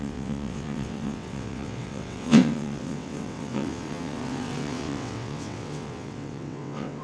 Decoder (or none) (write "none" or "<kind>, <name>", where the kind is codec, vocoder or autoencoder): vocoder, WaveNeXt